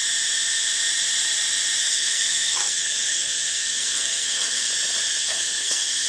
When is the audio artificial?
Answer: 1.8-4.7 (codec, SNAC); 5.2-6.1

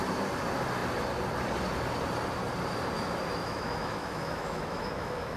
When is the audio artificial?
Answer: 3.3-5.4 (autoencoder, DAC-VAE)

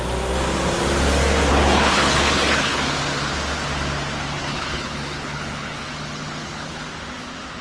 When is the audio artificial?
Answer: 1.5-2.8 (codec, HILCodec); 4.4-6.9

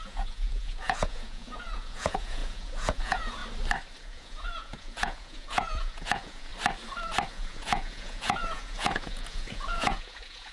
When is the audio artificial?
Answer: 0.0-3.4 (vocoder, Vocos); 4.0-6.5; 7.3-10.5

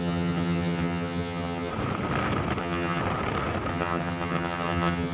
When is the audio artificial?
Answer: 0.0-1.7 (vocoder, HiFi-GAN); 2.6-3.0; 3.7-5.1